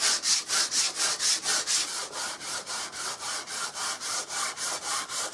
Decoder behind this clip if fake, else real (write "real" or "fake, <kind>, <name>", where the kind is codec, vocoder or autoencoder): fake, vocoder, BigVGAN v2